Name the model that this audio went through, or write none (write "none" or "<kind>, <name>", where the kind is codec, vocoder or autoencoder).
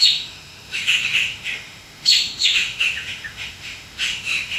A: autoencoder, DAC-VAE